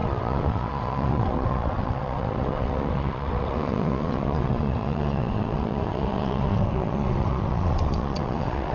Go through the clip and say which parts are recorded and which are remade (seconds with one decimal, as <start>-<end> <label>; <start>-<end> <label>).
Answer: 0.0-8.7 remade